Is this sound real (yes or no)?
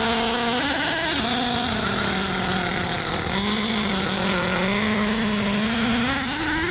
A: yes